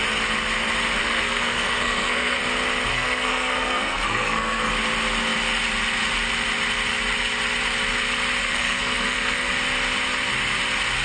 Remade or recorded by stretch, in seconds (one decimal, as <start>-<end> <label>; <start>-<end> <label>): 0.0-1.0 recorded; 1.0-2.4 remade; 2.4-2.9 recorded; 2.9-4.7 remade; 4.7-8.4 recorded; 8.4-9.5 remade; 9.5-11.0 recorded